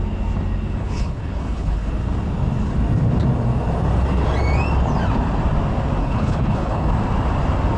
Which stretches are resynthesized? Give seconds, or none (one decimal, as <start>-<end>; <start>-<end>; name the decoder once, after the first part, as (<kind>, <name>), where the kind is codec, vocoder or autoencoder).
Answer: 0.8-1.9 (codec, HILCodec); 6.0-6.9